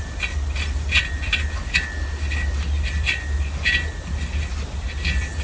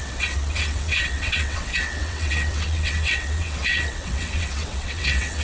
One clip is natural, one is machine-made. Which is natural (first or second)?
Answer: first